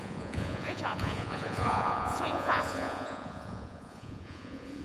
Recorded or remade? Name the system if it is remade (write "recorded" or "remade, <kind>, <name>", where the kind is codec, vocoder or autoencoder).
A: remade, vocoder, Vocos